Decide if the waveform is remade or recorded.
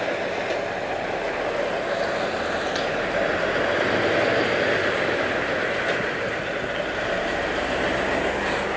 recorded